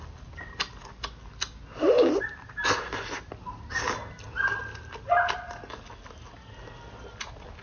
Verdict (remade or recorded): recorded